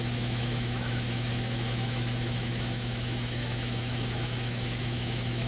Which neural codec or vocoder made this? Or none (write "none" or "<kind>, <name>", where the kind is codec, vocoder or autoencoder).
autoencoder, DAC-VAE